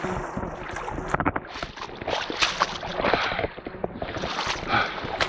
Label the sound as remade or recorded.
recorded